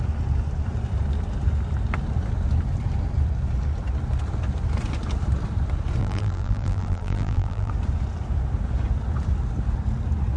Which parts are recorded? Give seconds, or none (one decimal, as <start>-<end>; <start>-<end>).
0.0-6.0; 7.7-10.4